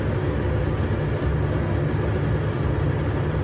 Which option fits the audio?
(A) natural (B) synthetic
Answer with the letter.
A